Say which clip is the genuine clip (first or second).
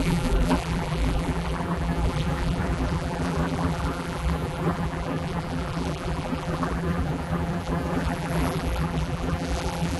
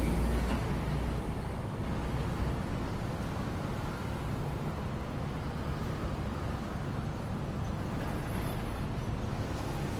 second